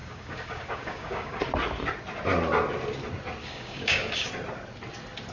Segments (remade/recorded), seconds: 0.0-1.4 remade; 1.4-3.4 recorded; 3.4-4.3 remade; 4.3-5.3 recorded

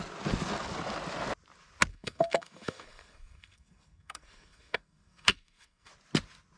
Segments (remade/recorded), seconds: 0.0-1.9 recorded; 1.9-5.9 remade; 5.9-6.6 recorded

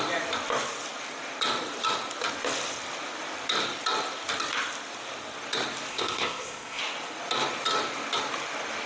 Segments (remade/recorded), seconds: 0.0-5.9 recorded; 5.9-6.8 remade; 6.8-8.9 recorded

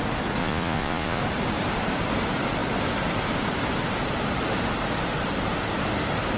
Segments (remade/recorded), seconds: 0.0-0.4 recorded; 0.4-1.2 remade; 1.2-6.4 recorded

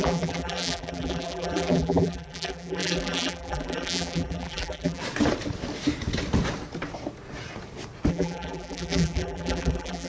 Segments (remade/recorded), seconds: 0.0-5.0 remade; 5.0-8.1 recorded; 8.1-10.1 remade